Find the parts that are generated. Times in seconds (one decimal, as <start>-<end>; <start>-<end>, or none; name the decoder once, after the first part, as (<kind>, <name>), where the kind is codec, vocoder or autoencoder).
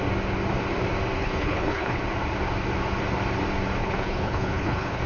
1.2-2.0 (codec, HILCodec); 3.8-5.1